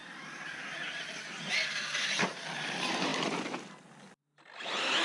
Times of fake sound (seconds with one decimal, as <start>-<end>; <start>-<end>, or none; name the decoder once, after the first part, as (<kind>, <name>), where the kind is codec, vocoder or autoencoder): none